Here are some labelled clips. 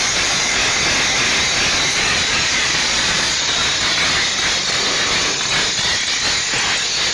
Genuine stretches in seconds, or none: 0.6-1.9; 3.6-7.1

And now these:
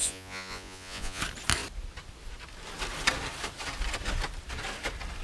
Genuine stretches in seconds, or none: 1.2-5.2

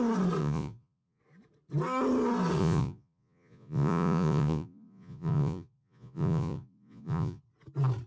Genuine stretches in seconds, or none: 0.0-0.4; 1.2-2.6; 7.4-8.1

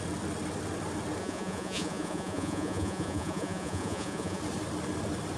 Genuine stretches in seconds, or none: 0.0-1.2; 4.4-5.4

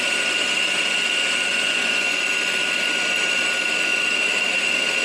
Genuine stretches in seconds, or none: 0.0-1.5; 2.2-5.0

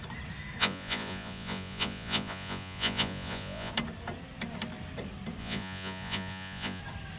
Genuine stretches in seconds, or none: 0.0-0.6; 3.7-5.4; 6.8-7.2

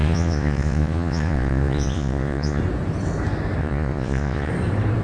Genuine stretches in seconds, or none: 2.6-3.6; 4.5-5.0

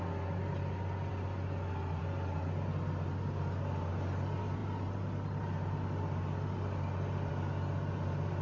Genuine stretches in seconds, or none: 0.0-8.4